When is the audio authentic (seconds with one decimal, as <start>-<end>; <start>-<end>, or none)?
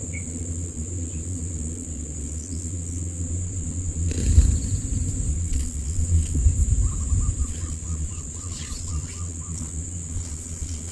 4.2-5.3; 6.4-7.4